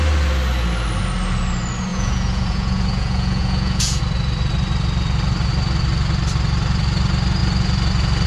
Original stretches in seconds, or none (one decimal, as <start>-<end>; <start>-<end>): 0.0-1.9; 4.0-8.3